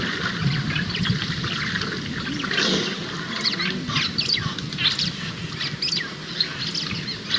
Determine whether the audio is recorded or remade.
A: recorded